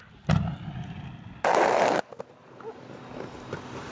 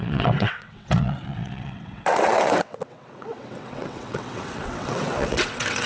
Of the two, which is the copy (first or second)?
second